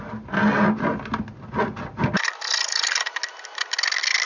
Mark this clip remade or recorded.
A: recorded